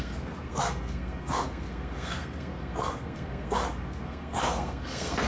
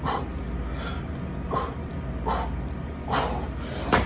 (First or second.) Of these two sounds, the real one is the second